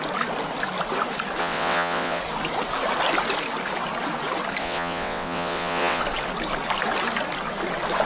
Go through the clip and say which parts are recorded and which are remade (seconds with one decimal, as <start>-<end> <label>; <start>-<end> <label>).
0.0-1.4 recorded; 1.4-2.2 remade; 2.2-4.6 recorded; 4.6-6.0 remade; 6.0-8.1 recorded